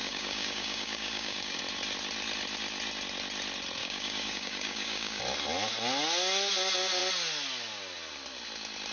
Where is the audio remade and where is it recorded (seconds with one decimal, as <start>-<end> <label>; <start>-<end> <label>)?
0.0-1.6 remade; 1.6-3.8 recorded; 3.8-5.2 remade; 5.2-8.9 recorded